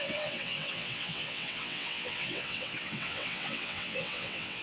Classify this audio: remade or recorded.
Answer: remade